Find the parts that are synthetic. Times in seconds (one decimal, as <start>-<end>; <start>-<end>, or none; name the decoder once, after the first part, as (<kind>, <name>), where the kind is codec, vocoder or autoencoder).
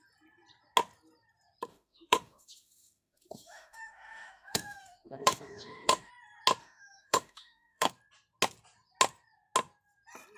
1.7-6.1 (autoencoder, DAC-VAE); 6.6-7.9